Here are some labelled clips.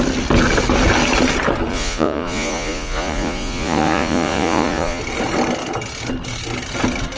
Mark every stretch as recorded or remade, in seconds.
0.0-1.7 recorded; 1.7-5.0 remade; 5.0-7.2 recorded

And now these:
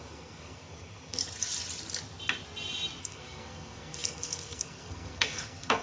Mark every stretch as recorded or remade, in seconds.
0.0-1.2 remade; 1.2-3.0 recorded; 3.0-5.8 remade

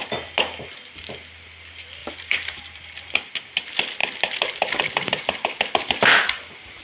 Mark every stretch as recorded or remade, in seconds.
0.0-2.0 recorded; 2.0-3.3 remade; 3.3-6.8 recorded